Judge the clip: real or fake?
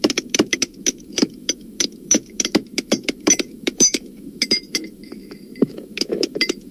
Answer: fake